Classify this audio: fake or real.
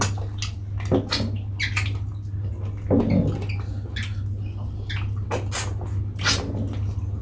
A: real